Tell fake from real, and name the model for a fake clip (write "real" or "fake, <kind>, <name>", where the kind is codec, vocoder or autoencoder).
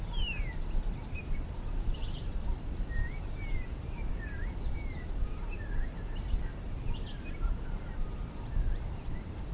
fake, vocoder, BigVGAN v2